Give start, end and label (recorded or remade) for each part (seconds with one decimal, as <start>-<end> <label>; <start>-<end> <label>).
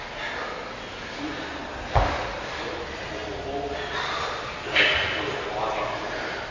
0.0-6.5 recorded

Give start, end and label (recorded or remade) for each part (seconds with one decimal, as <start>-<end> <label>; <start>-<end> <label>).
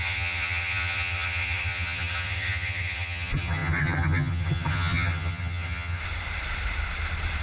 0.0-6.0 remade; 6.0-7.4 recorded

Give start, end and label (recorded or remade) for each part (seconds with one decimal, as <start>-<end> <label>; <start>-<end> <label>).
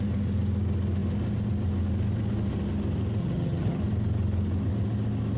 0.0-3.2 recorded; 3.2-3.8 remade; 3.8-5.4 recorded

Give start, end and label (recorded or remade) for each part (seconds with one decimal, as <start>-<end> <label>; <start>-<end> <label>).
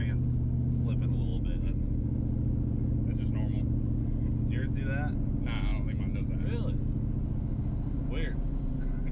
0.0-9.1 recorded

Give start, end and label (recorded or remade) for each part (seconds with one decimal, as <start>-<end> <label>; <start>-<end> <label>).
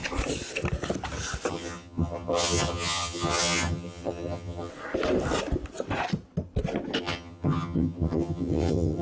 0.0-1.5 recorded; 1.5-4.7 remade; 4.7-7.0 recorded; 7.0-9.0 remade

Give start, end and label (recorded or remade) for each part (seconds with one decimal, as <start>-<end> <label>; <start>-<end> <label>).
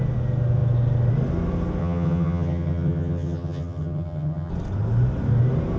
0.0-1.8 recorded; 1.8-4.5 remade; 4.5-5.8 recorded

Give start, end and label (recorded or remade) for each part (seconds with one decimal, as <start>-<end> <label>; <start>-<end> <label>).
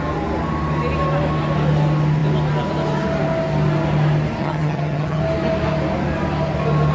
0.0-4.4 recorded; 4.4-5.2 remade; 5.2-6.9 recorded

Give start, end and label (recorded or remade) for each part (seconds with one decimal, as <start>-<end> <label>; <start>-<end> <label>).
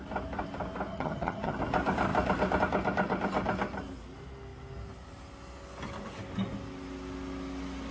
0.0-0.9 recorded; 0.9-1.6 remade; 1.6-7.9 recorded